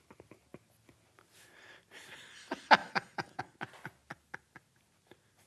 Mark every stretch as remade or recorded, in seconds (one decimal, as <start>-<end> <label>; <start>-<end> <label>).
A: 0.0-2.8 recorded; 2.8-3.4 remade; 3.4-5.5 recorded